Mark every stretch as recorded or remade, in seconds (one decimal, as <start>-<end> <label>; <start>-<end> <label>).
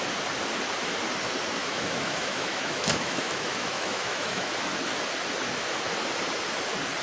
0.0-1.6 recorded; 1.6-4.5 remade; 4.5-7.0 recorded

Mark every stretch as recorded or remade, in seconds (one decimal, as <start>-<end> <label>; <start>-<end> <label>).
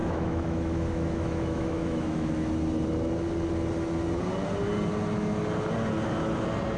0.0-2.3 remade; 2.3-6.8 recorded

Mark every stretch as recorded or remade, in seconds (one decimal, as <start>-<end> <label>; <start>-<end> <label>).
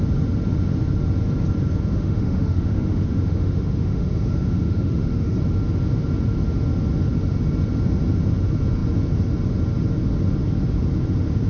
0.0-1.9 recorded; 1.9-5.4 remade; 5.4-11.5 recorded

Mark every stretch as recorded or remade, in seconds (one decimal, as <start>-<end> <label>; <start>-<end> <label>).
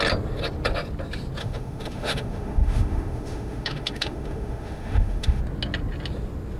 0.0-1.4 recorded; 1.4-5.4 remade; 5.4-6.6 recorded